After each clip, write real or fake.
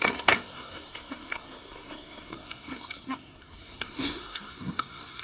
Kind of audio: fake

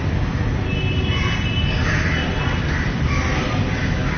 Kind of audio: real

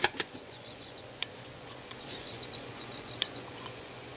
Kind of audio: fake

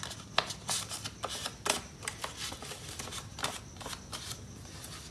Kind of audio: real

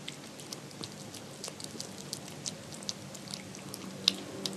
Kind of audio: real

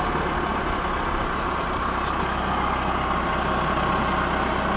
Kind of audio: real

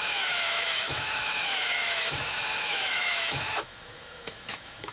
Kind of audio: fake